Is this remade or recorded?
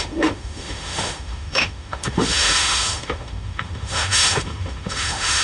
remade